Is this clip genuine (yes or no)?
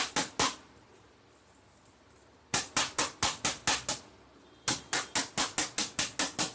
yes